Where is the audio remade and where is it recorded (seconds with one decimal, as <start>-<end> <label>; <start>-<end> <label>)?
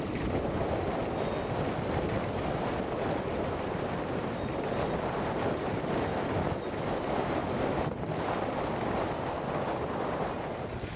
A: 0.0-11.0 recorded